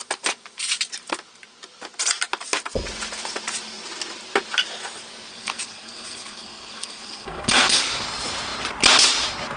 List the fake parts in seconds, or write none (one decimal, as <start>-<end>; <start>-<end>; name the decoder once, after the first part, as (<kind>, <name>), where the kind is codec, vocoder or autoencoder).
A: 5.3-7.8 (codec, SNAC)